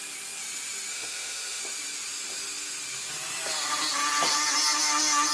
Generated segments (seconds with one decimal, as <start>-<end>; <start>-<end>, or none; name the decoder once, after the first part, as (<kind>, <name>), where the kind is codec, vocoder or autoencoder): 0.9-1.6 (autoencoder, DAC-VAE)